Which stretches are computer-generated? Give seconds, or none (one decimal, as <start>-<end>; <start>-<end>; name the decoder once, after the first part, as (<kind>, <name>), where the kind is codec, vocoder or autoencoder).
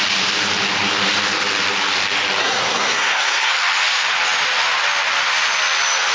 2.4-3.5 (codec, SNAC)